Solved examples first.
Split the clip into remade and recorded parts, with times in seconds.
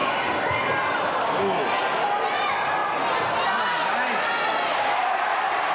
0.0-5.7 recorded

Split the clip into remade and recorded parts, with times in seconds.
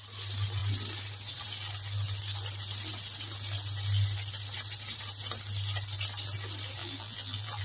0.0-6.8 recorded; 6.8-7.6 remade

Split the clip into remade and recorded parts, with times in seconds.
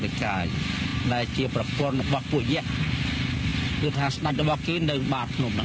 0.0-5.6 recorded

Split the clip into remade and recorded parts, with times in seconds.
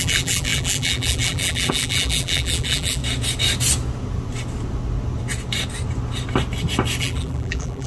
0.0-3.0 remade; 3.0-7.0 recorded; 7.0-7.9 remade